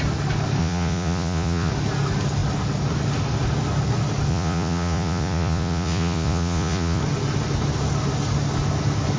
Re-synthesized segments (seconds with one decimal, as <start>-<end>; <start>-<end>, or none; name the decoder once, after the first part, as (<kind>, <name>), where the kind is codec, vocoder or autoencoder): 0.6-1.7 (vocoder, Vocos); 4.3-7.0